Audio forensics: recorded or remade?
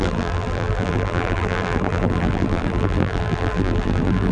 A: remade